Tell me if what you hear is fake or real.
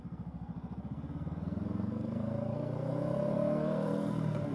fake